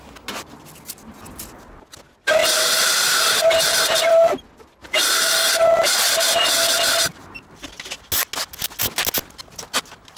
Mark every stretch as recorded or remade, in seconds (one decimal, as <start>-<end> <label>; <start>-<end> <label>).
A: 0.0-10.2 recorded

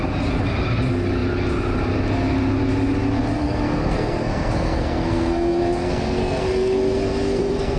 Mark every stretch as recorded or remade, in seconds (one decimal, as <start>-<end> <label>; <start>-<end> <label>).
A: 0.0-3.4 recorded; 3.4-7.8 remade

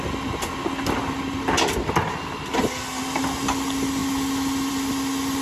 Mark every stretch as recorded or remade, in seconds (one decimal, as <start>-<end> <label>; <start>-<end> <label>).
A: 0.0-5.4 recorded

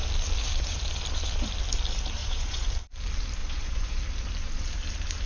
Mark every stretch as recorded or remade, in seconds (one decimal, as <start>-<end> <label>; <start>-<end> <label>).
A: 0.0-2.2 recorded; 2.2-2.7 remade; 2.7-3.4 recorded; 3.4-4.0 remade; 4.0-5.3 recorded

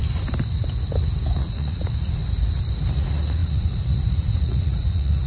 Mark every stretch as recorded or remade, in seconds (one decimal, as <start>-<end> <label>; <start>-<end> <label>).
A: 0.0-1.4 recorded; 1.4-2.2 remade; 2.2-2.9 recorded; 2.9-5.3 remade